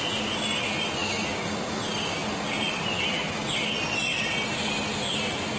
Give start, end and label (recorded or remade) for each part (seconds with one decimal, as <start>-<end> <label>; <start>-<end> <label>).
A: 0.0-5.6 recorded